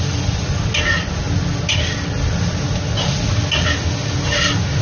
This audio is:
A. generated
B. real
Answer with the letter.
B